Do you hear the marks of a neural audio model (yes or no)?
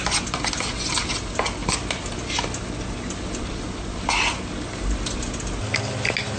no